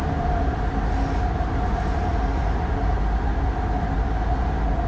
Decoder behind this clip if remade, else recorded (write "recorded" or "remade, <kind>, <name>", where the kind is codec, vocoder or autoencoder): recorded